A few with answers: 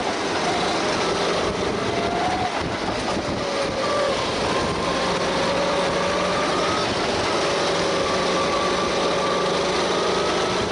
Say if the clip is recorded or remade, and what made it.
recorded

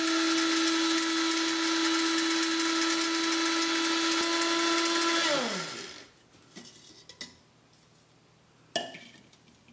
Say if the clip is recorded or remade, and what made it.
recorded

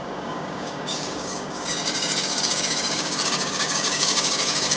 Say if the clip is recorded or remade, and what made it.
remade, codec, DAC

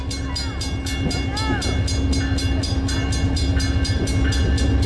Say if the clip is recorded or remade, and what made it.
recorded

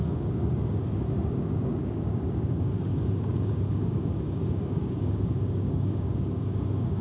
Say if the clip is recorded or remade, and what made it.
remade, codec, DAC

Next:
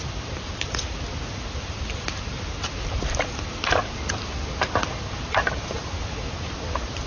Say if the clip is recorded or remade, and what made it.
recorded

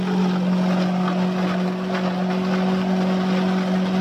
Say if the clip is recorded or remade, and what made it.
recorded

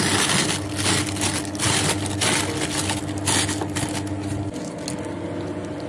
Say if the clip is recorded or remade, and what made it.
recorded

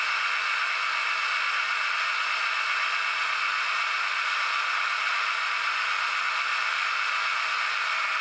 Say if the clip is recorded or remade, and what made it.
recorded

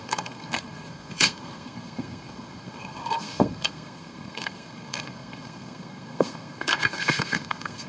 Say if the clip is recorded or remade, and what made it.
remade, codec, SNAC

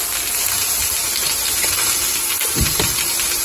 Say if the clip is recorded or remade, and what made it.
recorded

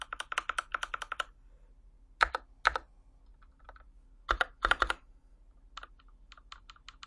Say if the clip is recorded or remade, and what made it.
recorded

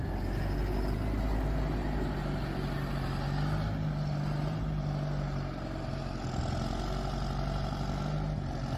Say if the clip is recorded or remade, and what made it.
recorded